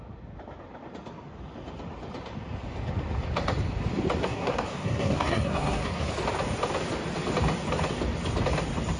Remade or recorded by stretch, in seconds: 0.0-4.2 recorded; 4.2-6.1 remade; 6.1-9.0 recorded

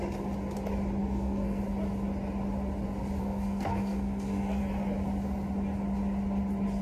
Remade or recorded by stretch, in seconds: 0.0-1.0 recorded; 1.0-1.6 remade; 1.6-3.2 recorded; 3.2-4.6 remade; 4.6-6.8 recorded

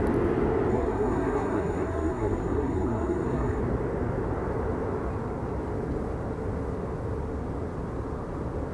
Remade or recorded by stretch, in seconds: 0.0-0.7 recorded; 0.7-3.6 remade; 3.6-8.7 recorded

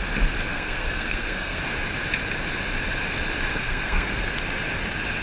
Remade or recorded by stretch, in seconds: 0.0-0.5 recorded; 0.5-1.6 remade; 1.6-3.5 recorded; 3.5-4.1 remade; 4.1-5.2 recorded

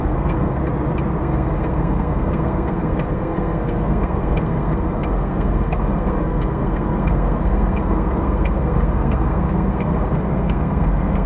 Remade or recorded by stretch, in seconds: 0.0-0.6 remade; 0.6-1.2 recorded; 1.2-11.3 remade

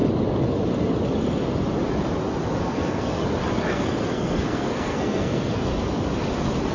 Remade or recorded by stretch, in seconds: 0.0-2.6 recorded; 2.6-3.2 remade; 3.2-3.7 recorded; 3.7-5.7 remade; 5.7-6.7 recorded

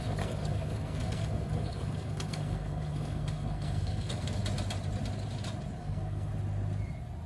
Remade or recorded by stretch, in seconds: 0.0-4.4 remade; 4.4-5.8 recorded; 5.8-6.3 remade; 6.3-7.3 recorded